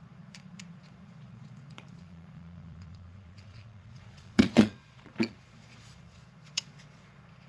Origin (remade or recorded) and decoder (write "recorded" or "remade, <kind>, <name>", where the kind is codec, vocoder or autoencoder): remade, vocoder, Vocos